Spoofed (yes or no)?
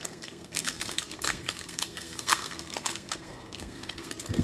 yes